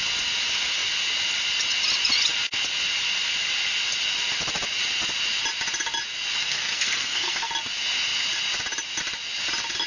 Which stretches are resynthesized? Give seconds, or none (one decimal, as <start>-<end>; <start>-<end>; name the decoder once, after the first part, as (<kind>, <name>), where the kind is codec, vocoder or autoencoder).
6.4-7.5 (codec, SNAC)